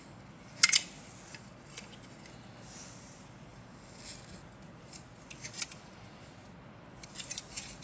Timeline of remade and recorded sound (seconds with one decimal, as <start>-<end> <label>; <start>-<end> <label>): 0.0-7.8 recorded